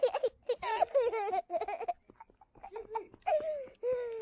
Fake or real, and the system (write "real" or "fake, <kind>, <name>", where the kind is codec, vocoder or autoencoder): real